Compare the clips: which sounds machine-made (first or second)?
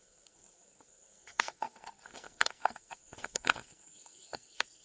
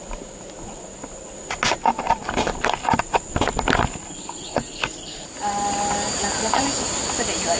first